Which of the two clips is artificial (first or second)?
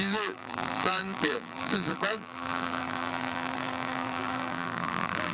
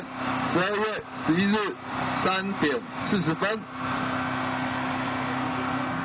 first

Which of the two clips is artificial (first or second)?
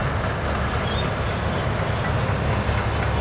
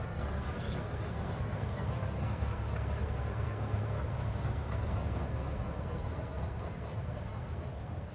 second